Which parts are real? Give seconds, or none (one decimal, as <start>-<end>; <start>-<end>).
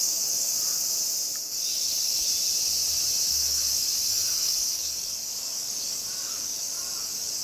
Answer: 0.5-1.4; 2.3-3.3